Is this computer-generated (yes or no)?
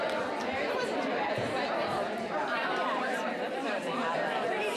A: yes